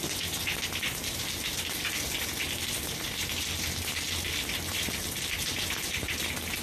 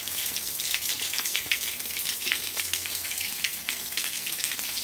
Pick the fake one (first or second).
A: second